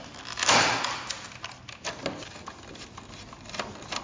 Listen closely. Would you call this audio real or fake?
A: real